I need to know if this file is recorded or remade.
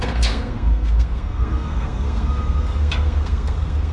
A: remade